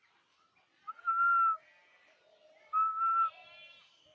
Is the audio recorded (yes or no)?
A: yes